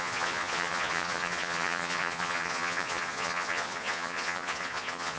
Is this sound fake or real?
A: fake